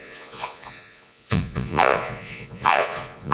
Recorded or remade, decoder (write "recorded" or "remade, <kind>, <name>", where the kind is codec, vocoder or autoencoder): remade, vocoder, Vocos